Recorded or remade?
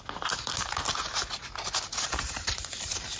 recorded